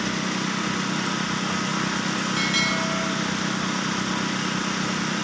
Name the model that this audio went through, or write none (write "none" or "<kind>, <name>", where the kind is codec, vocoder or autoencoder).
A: none